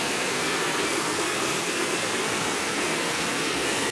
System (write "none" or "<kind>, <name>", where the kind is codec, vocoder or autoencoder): codec, SNAC